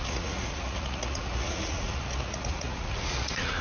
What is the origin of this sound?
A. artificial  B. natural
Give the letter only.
A